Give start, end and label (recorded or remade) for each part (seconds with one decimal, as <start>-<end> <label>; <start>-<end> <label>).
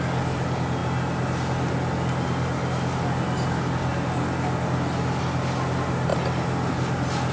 0.0-7.3 recorded